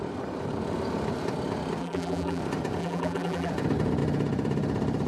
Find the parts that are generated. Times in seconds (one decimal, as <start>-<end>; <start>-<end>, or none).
1.8-2.4; 2.8-3.5